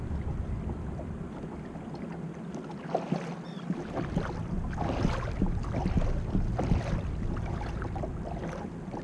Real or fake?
real